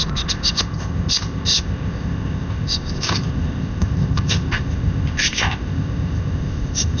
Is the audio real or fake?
fake